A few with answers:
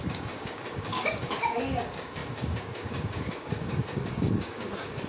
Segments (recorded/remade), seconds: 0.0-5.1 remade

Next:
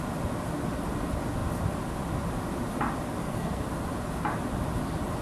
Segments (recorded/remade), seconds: 0.0-3.2 recorded; 3.2-3.7 remade; 3.7-5.2 recorded

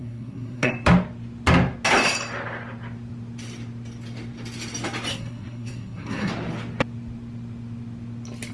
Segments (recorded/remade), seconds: 0.0-0.7 remade; 0.7-5.1 recorded; 5.1-6.3 remade; 6.3-8.5 recorded

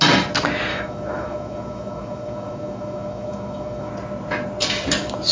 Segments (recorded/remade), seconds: 0.0-0.7 recorded; 0.7-3.9 remade; 3.9-5.3 recorded